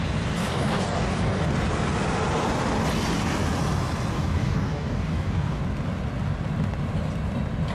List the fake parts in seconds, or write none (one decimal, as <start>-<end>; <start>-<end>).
0.4-1.5; 4.1-5.6